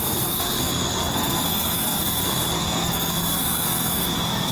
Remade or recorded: remade